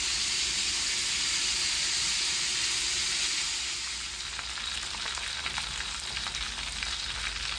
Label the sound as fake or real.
real